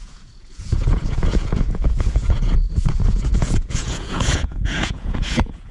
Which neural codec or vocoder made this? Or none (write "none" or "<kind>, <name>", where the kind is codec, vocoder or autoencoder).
vocoder, Vocos